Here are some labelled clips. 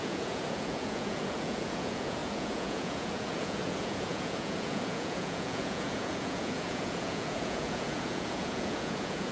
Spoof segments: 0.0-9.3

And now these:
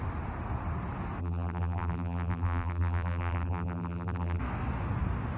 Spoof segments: 1.2-4.4

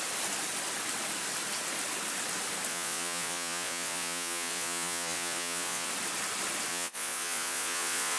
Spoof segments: 2.7-5.9; 6.7-8.2